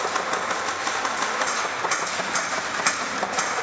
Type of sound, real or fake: real